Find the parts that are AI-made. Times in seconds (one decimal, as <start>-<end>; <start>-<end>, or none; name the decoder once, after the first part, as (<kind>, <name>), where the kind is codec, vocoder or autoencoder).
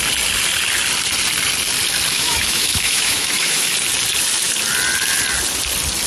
2.1-3.7 (autoencoder, DAC-VAE)